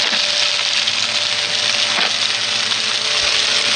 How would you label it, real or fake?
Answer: real